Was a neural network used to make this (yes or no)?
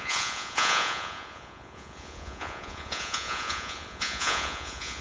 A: yes